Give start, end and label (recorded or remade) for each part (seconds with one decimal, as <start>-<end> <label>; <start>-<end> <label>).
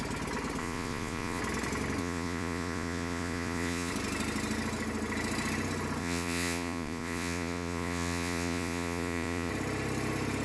0.0-0.6 recorded; 0.6-1.4 remade; 1.4-2.0 recorded; 2.0-3.9 remade; 3.9-6.0 recorded; 6.0-9.5 remade; 9.5-10.4 recorded